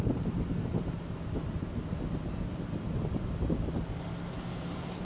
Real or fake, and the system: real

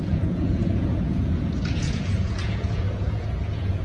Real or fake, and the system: fake, vocoder, Vocos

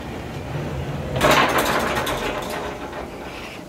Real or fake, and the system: real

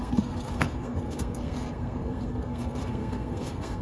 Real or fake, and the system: fake, codec, SNAC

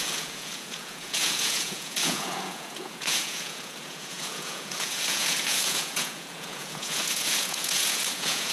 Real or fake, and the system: fake, vocoder, Vocos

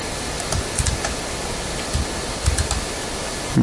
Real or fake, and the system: real